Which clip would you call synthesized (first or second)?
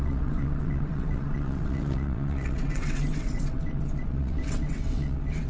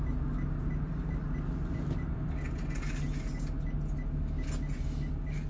first